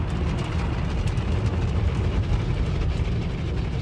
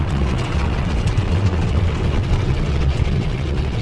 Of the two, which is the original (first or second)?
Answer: first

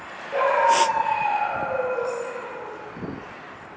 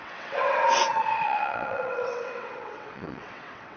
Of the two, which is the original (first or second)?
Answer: first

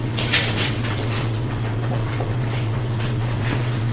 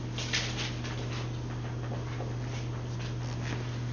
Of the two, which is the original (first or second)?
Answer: second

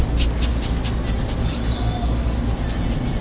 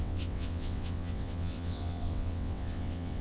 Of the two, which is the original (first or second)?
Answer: first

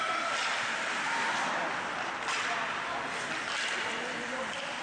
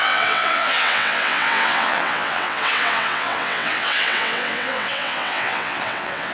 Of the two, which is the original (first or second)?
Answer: first